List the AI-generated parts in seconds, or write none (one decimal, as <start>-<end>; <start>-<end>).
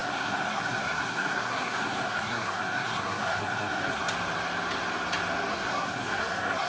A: 0.0-4.0; 5.5-6.7